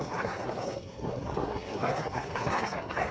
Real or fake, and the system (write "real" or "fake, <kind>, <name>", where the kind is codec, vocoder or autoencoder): fake, codec, SNAC